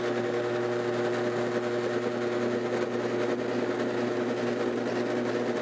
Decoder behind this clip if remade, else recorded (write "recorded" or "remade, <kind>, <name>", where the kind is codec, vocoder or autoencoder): recorded